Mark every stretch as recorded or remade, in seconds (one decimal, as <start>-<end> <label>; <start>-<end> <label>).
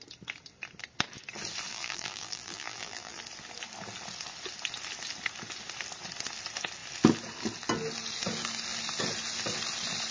0.0-1.7 recorded; 1.7-3.2 remade; 3.2-10.1 recorded